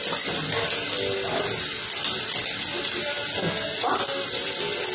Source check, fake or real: real